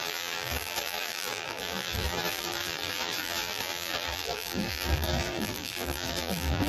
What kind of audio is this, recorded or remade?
remade